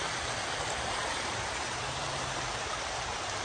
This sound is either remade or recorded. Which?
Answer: remade